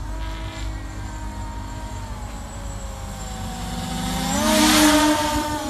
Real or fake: real